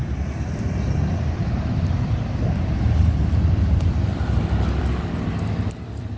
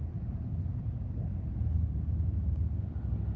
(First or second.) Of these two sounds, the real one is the second